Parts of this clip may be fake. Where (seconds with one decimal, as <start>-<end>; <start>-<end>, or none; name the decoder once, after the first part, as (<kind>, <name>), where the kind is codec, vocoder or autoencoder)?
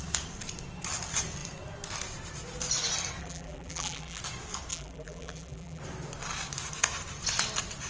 3.2-4.2 (vocoder, BigVGAN v2); 4.7-5.8